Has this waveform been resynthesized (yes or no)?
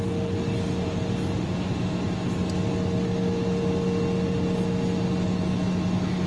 no